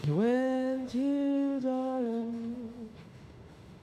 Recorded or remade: remade